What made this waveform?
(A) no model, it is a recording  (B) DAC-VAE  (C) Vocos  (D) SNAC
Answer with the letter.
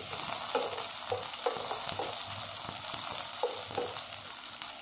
A